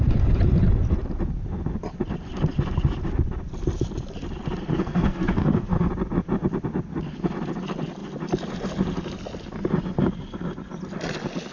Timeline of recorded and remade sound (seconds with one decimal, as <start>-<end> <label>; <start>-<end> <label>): 0.0-4.7 recorded; 4.7-5.9 remade; 5.9-11.5 recorded